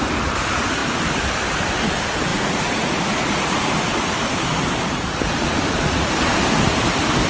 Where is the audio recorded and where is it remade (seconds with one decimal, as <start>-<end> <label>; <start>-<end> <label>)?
0.0-2.3 recorded; 2.3-3.7 remade; 3.7-5.4 recorded; 5.4-6.2 remade; 6.2-7.3 recorded